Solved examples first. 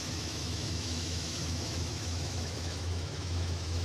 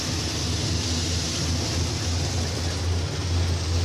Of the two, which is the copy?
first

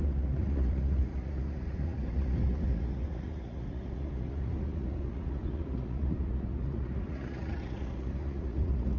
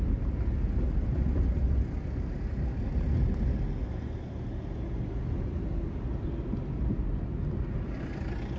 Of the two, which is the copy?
first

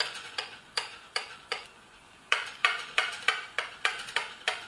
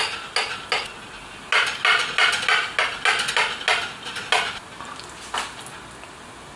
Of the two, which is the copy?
first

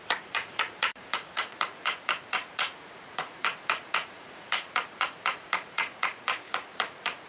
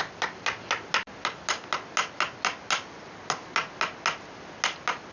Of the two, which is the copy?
first